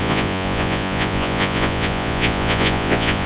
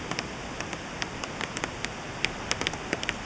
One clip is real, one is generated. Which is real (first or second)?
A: second